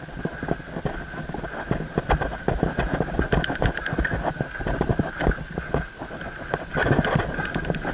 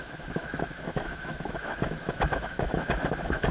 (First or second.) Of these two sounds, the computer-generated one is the second